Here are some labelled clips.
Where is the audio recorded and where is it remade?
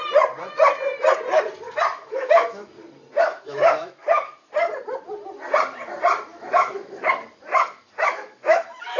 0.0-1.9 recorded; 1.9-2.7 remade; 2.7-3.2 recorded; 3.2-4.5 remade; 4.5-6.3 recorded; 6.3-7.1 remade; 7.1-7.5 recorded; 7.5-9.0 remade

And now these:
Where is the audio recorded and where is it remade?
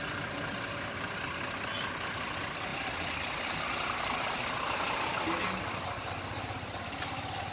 0.0-2.7 recorded; 2.7-5.4 remade; 5.4-7.5 recorded